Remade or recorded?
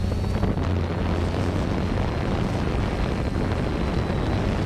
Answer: recorded